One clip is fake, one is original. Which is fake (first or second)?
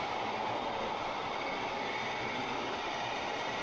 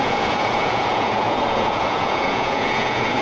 second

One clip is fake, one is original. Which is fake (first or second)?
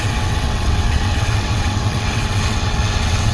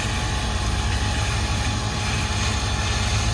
first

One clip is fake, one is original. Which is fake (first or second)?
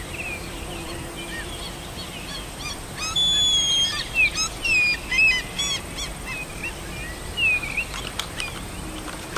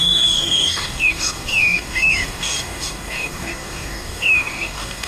second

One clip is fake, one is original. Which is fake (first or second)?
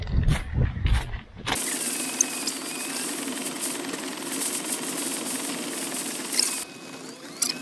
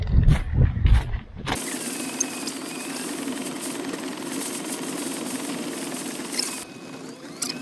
second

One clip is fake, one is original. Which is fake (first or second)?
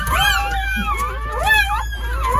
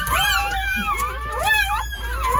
second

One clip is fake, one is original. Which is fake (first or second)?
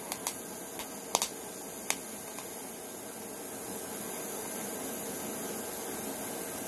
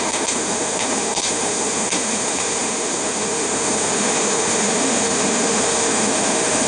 second